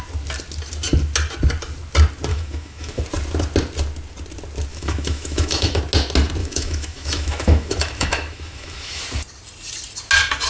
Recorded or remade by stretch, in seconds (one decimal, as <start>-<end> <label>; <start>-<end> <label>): 0.0-2.3 recorded; 2.3-3.0 remade; 3.0-4.7 recorded; 4.7-5.8 remade; 5.8-6.4 recorded; 6.4-9.0 remade; 9.0-10.5 recorded